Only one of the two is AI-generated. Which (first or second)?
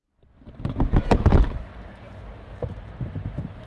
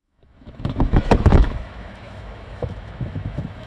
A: second